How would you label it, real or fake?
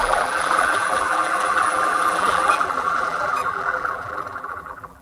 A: fake